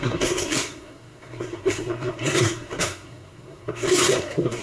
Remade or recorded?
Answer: remade